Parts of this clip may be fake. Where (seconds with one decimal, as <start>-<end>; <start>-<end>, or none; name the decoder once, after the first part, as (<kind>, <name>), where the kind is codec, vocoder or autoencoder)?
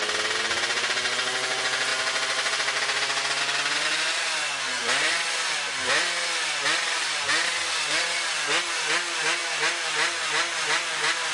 none